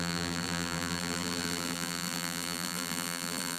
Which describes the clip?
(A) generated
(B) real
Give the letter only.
A